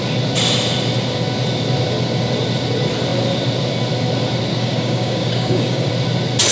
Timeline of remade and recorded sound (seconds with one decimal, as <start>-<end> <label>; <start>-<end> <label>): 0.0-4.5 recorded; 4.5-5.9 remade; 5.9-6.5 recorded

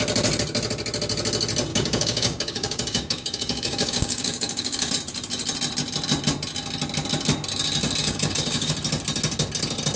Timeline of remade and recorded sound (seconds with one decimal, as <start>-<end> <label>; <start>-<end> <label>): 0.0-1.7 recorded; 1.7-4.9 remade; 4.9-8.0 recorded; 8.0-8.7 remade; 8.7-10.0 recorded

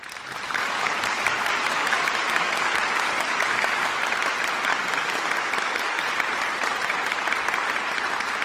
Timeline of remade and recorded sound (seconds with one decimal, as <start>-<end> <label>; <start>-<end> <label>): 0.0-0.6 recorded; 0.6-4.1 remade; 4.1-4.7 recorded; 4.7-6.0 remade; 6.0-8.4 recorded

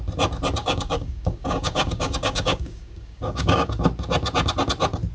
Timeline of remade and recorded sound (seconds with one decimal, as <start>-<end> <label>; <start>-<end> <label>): 0.0-0.6 recorded; 0.6-3.7 remade; 3.7-5.1 recorded